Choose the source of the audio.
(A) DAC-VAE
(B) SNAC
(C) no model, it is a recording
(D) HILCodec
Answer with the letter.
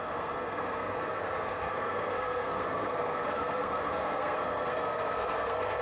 B